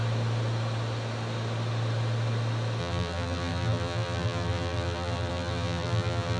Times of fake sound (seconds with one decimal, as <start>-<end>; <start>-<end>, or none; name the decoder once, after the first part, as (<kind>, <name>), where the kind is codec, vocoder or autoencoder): 2.8-6.4 (vocoder, BigVGAN v2)